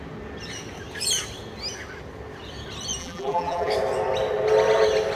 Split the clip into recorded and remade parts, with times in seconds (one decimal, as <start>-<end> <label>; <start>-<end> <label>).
0.0-3.0 recorded; 3.0-3.7 remade; 3.7-5.2 recorded